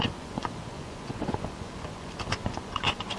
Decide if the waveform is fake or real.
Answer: fake